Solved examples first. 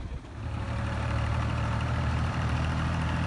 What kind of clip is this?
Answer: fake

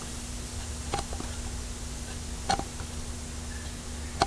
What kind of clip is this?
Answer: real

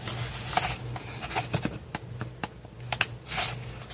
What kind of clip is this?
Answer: real